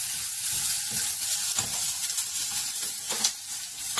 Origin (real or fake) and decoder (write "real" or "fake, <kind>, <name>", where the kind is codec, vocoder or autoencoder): real